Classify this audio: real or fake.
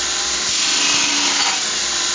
real